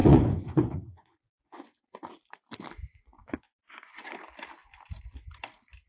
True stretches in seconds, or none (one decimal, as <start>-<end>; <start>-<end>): 1.8-3.2; 4.1-5.9